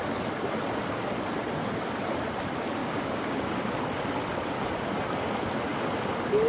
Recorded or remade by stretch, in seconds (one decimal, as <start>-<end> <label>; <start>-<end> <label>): 0.0-2.8 recorded; 2.8-3.8 remade; 3.8-6.5 recorded